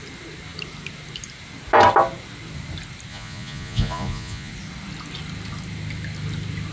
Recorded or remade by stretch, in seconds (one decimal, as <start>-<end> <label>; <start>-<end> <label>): 0.0-3.1 recorded; 3.1-4.5 remade; 4.5-6.7 recorded